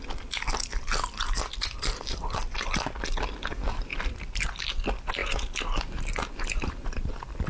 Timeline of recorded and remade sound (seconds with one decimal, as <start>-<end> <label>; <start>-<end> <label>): 0.0-7.5 recorded